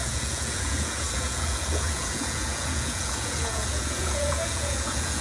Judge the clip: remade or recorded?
remade